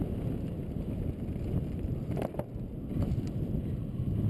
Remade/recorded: recorded